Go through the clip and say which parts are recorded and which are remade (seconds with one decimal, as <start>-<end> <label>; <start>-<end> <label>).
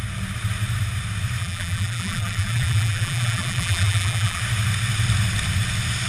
0.0-1.4 recorded; 1.4-4.4 remade; 4.4-6.1 recorded